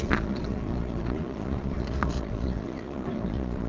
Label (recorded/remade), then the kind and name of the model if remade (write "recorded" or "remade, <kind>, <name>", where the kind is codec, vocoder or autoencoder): remade, vocoder, Vocos